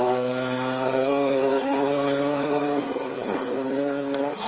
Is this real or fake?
fake